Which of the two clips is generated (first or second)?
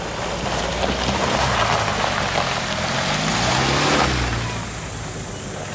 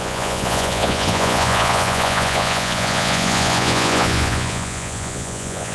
second